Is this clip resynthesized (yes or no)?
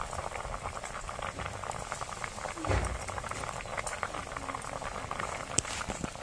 no